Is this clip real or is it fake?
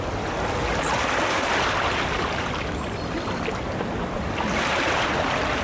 real